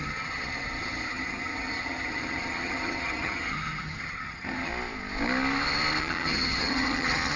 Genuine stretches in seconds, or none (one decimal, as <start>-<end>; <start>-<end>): 4.7-6.0